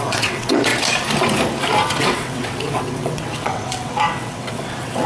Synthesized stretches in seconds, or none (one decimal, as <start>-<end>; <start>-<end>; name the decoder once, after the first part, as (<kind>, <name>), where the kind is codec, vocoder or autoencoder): 0.0-0.7 (vocoder, WaveNeXt); 2.0-5.1